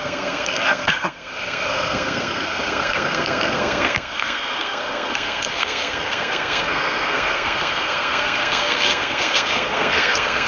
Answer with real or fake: fake